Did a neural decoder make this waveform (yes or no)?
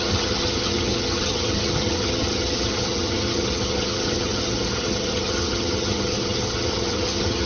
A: yes